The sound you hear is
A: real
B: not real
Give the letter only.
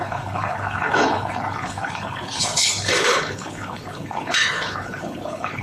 B